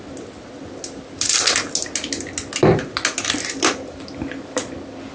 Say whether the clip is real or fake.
real